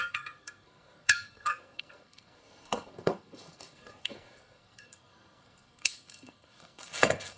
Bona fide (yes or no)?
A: no